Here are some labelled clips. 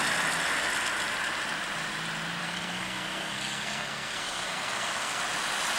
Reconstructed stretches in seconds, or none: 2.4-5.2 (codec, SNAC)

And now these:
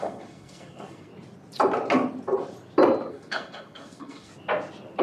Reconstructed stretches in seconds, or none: 0.0-1.1 (codec, SNAC); 3.1-4.3